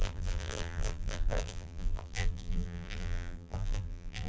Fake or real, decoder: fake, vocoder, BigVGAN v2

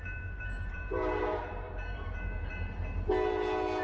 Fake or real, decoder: fake, vocoder, BigVGAN v2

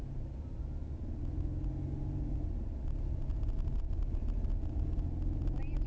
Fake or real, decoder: real